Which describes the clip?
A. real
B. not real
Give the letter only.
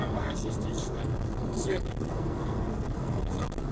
B